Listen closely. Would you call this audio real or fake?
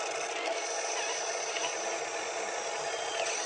real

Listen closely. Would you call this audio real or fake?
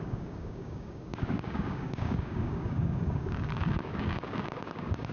fake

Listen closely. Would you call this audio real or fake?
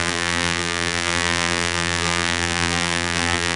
fake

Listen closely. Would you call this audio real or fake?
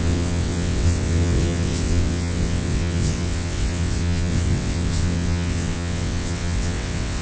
fake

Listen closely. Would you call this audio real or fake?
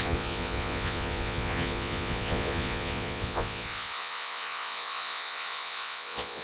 fake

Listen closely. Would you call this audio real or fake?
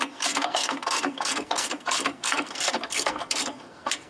fake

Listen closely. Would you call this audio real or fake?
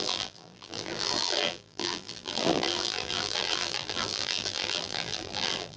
fake